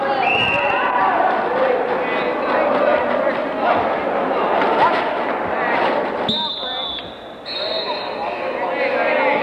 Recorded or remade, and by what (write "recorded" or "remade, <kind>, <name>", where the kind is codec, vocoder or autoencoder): recorded